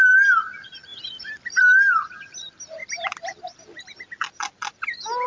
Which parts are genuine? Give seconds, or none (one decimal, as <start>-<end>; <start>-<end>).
0.0-0.9; 1.6-5.3